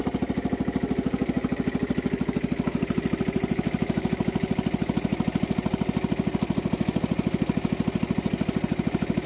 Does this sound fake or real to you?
real